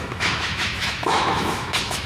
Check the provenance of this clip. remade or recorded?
remade